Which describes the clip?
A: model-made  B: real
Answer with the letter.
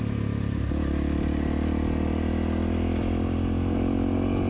B